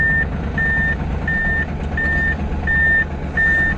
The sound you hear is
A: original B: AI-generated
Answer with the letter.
A